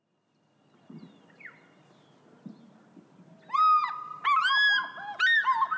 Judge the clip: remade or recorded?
recorded